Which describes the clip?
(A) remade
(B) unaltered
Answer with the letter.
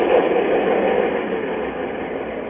B